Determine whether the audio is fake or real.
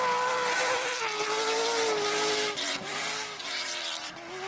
real